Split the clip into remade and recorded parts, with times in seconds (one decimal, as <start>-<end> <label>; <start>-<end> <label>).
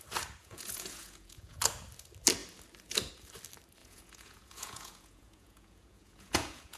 0.0-0.4 recorded; 0.4-1.6 remade; 1.6-3.8 recorded; 3.8-6.8 remade